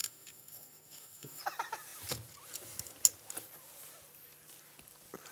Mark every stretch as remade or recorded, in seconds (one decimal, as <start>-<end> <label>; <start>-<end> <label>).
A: 0.0-1.4 remade; 1.4-5.3 recorded